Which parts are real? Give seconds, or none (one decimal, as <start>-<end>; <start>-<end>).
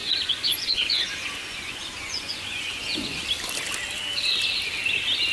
3.2-5.3